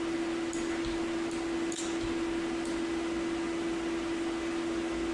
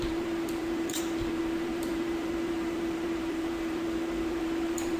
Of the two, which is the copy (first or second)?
second